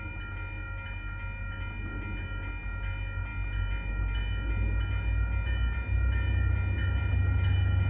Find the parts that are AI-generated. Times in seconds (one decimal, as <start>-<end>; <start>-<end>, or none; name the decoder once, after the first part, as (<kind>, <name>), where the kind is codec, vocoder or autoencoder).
none